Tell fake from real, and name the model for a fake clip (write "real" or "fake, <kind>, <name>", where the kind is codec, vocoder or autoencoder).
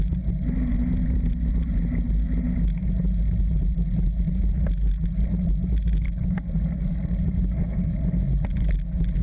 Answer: real